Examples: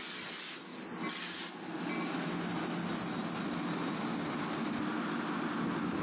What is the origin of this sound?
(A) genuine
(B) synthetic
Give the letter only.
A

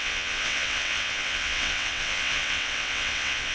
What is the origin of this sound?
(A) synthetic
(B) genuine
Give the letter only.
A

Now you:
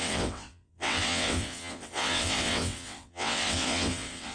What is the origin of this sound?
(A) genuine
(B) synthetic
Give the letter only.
B